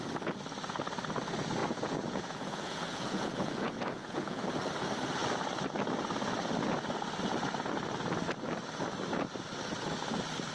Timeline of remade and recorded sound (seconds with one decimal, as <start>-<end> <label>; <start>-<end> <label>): 0.0-1.6 recorded; 1.6-4.5 remade; 4.5-10.5 recorded